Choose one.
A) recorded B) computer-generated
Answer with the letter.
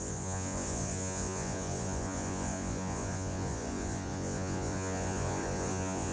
B